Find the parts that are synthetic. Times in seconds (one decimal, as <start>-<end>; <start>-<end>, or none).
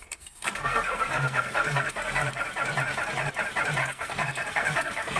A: 0.0-2.4; 3.8-5.2